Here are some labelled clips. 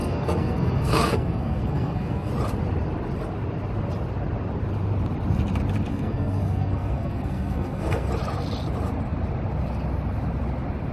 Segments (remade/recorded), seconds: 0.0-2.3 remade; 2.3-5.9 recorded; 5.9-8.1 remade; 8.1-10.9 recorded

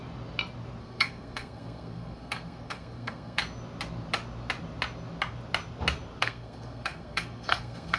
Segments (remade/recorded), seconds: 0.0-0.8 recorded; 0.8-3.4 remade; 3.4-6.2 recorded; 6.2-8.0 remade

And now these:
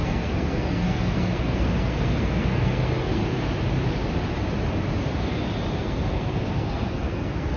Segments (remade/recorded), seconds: 0.0-3.2 remade; 3.2-5.8 recorded; 5.8-7.6 remade

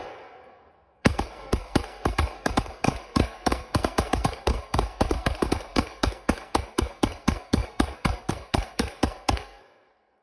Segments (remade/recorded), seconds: 0.0-10.2 remade

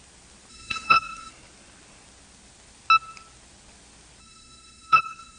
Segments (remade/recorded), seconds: 0.0-0.5 recorded; 0.5-1.3 remade; 1.3-4.2 recorded; 4.2-5.4 remade